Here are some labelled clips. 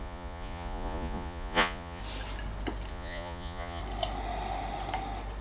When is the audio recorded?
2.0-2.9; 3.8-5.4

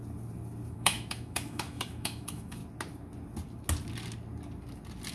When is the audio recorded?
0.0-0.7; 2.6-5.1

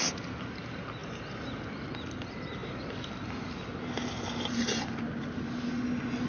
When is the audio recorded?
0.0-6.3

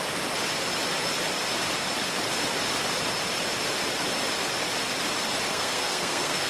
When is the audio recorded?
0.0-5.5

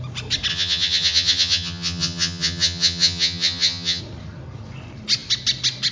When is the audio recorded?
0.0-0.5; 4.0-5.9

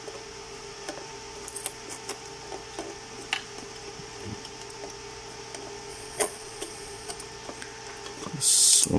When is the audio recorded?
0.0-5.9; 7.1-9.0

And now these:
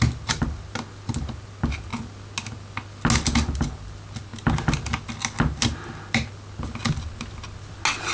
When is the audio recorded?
0.0-8.1

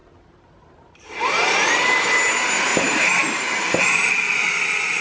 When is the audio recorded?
1.7-2.7; 4.6-5.0